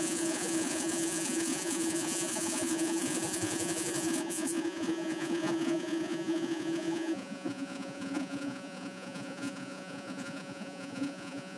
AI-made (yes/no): yes